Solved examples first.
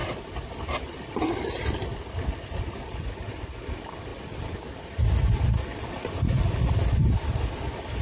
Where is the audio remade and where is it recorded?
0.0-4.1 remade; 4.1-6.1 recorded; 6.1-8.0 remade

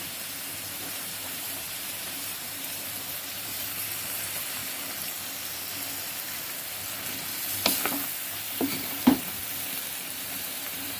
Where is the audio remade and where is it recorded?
0.0-4.6 remade; 4.6-8.5 recorded; 8.5-9.4 remade; 9.4-10.0 recorded; 10.0-11.0 remade

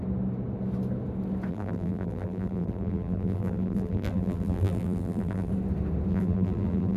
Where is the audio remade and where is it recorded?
0.0-1.5 recorded; 1.5-5.5 remade; 5.5-6.1 recorded; 6.1-7.0 remade

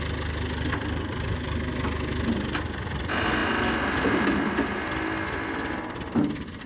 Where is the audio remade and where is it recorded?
0.0-6.7 recorded